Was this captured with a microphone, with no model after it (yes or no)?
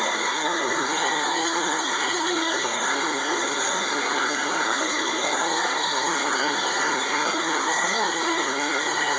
no